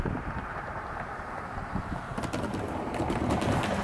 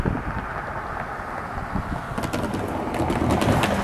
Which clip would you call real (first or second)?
second